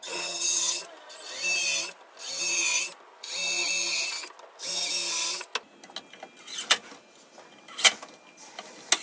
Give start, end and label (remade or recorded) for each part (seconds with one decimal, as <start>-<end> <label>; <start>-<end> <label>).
0.0-0.8 remade; 0.8-9.0 recorded